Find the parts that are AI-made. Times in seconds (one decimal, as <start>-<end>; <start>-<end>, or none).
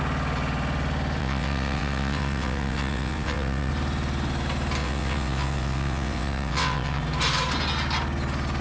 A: 1.2-3.7; 4.8-7.0